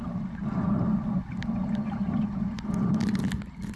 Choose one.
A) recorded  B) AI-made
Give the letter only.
A